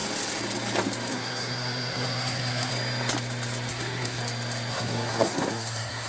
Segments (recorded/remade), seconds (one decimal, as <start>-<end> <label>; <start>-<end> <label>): 0.0-1.1 recorded; 1.1-2.7 remade; 2.7-3.7 recorded; 3.7-4.2 remade; 4.2-4.7 recorded; 4.7-6.1 remade